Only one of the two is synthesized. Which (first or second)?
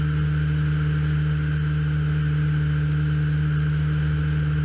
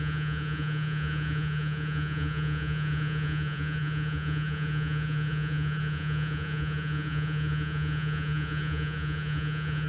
second